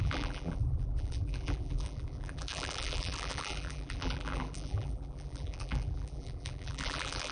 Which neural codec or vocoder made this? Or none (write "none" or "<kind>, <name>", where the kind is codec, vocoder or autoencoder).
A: vocoder, BigVGAN v2